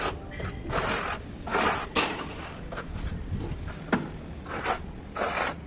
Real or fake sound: real